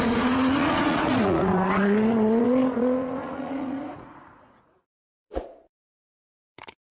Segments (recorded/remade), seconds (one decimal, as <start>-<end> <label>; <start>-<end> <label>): 0.0-7.0 remade